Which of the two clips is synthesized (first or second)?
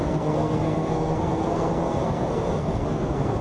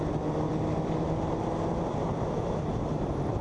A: first